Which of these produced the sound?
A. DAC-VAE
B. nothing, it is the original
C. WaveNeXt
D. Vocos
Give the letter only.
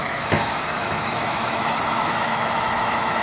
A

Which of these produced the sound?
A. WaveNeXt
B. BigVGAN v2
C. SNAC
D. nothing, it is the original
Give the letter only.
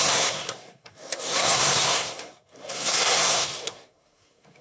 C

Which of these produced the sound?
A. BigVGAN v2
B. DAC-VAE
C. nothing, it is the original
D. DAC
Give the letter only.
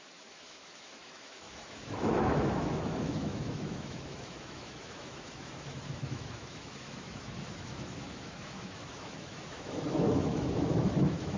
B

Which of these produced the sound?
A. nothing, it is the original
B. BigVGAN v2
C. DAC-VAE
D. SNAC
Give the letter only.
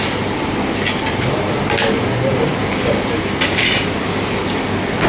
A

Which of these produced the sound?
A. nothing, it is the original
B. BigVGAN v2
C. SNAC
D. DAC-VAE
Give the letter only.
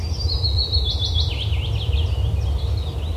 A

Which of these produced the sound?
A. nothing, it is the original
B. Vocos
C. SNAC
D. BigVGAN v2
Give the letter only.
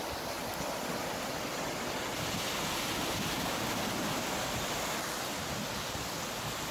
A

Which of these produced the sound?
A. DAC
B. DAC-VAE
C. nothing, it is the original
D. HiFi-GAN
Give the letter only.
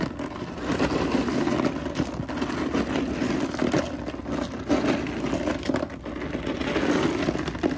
C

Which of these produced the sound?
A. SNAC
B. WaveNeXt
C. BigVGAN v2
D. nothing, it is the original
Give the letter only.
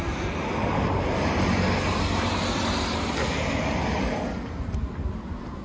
D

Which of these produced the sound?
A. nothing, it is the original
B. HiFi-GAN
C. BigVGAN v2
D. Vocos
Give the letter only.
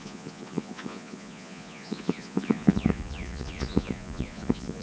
D